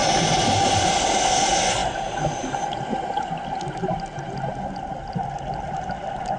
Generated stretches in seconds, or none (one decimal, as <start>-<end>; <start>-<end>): 0.0-0.8; 3.8-6.0